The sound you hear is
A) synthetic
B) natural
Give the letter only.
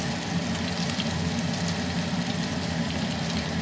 B